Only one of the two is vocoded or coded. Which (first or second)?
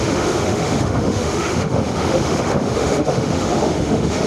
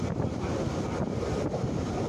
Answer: first